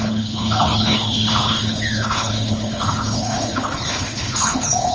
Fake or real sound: fake